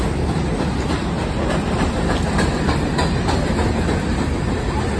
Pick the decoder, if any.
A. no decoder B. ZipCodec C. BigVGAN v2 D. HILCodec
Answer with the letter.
A